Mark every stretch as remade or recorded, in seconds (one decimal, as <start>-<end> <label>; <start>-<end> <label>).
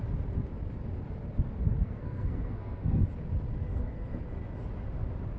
0.0-1.8 recorded; 1.8-3.0 remade; 3.0-3.6 recorded; 3.6-4.2 remade; 4.2-5.4 recorded